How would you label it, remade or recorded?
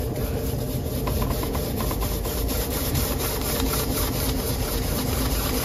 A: remade